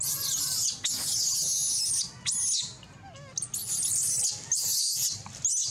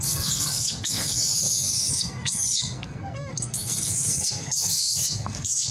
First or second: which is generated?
second